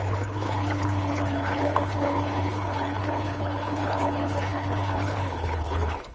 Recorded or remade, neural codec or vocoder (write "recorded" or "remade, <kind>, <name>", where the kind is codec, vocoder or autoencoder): remade, codec, HILCodec